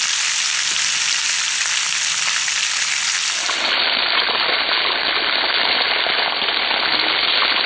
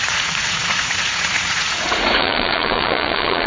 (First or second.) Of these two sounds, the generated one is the second